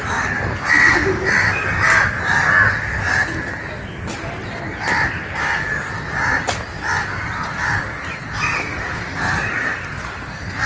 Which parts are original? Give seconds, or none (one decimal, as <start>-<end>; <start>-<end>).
0.0-10.7